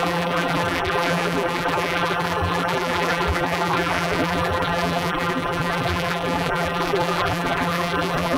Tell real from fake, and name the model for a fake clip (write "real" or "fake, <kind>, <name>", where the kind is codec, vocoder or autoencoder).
fake, vocoder, BigVGAN v2